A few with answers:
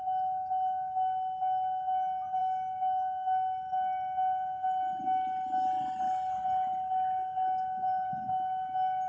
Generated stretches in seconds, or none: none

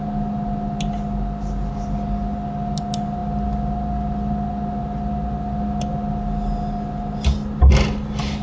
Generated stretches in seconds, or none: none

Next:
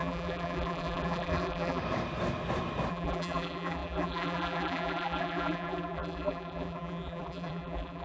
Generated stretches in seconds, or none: 0.0-1.8 (vocoder, BigVGAN v2); 2.9-8.0

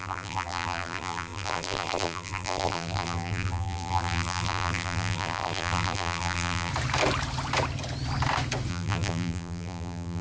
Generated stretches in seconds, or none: 0.0-6.7 (vocoder, BigVGAN v2); 8.7-10.2